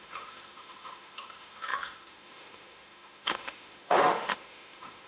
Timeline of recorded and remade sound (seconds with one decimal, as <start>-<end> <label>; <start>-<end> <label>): 0.0-5.1 remade